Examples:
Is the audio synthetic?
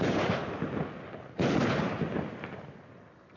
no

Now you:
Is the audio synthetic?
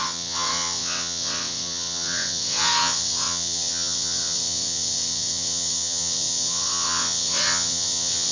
yes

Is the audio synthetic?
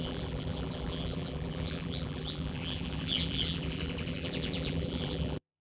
yes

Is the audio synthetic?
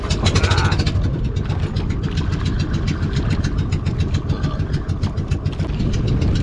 no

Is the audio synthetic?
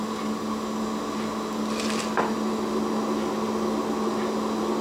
no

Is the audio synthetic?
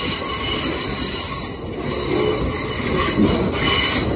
no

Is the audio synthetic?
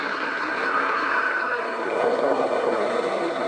yes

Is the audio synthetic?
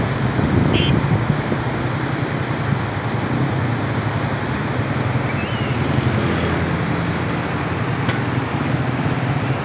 no